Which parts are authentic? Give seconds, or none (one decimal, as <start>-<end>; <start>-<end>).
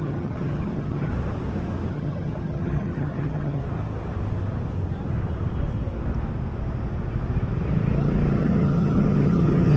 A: 1.1-1.9; 3.6-8.3